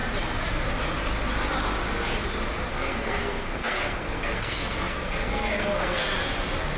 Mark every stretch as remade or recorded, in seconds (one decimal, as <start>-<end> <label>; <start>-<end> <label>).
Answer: 0.0-2.7 recorded; 2.7-6.0 remade; 6.0-6.8 recorded